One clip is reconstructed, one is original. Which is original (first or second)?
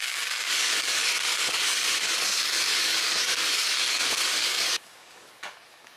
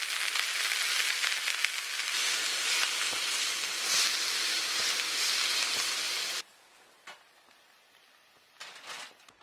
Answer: second